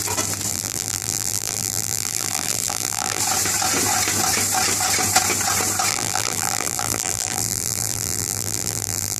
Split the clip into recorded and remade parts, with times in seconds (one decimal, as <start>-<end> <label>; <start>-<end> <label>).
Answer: 0.0-0.5 recorded; 0.5-3.2 remade; 3.2-5.9 recorded; 5.9-9.2 remade